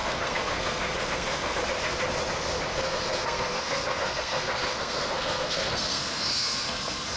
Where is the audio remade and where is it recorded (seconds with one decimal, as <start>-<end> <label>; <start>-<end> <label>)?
0.0-1.6 remade; 1.6-2.7 recorded; 2.7-7.2 remade